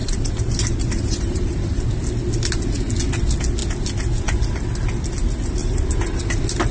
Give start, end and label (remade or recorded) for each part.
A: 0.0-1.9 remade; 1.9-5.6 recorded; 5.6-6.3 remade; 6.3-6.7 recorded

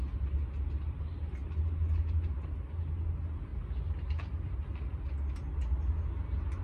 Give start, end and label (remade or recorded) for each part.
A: 0.0-6.6 recorded

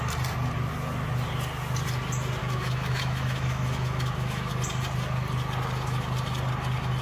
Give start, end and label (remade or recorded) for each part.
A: 0.0-2.4 recorded; 2.4-4.5 remade; 4.5-7.0 recorded